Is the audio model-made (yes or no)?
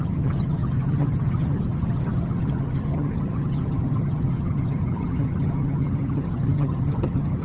yes